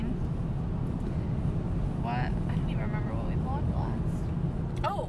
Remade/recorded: recorded